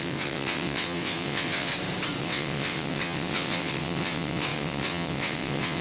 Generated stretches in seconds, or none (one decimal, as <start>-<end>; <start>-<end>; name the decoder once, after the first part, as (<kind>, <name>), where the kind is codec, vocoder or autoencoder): 0.0-1.7 (vocoder, WaveNeXt); 2.2-5.8